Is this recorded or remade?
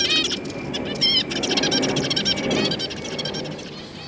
recorded